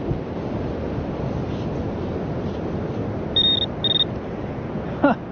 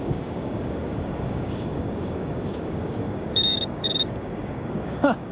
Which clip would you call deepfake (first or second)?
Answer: second